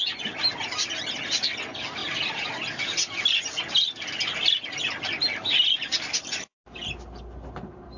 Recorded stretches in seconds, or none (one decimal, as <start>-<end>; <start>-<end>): 0.0-8.0